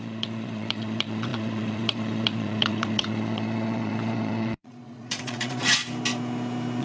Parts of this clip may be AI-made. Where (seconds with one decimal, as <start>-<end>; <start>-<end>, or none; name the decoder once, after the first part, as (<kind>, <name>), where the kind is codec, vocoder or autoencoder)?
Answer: 0.0-5.8 (vocoder, Vocos)